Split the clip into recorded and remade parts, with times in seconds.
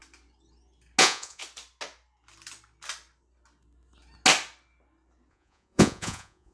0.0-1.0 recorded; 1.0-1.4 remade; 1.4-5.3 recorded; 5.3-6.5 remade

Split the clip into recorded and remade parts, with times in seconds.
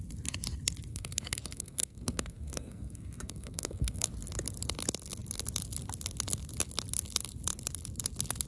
0.0-0.9 recorded; 0.9-4.1 remade; 4.1-8.5 recorded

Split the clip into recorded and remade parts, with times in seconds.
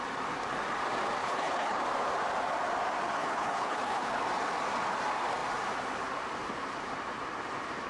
0.0-1.2 recorded; 1.2-1.8 remade; 1.8-3.2 recorded; 3.2-4.2 remade; 4.2-7.9 recorded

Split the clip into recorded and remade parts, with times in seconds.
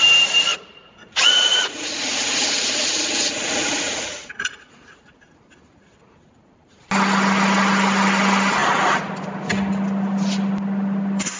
0.0-0.5 recorded; 0.5-5.3 remade; 5.3-11.4 recorded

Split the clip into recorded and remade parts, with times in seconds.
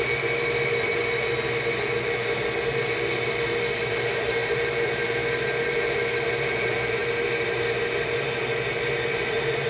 0.0-9.7 recorded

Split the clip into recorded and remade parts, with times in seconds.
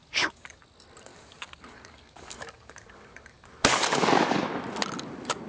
0.0-0.6 remade; 0.6-1.1 recorded; 1.1-4.4 remade; 4.4-5.5 recorded